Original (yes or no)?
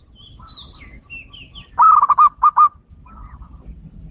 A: yes